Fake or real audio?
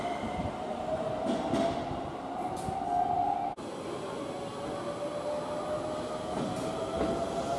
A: real